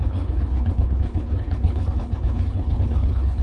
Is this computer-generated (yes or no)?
yes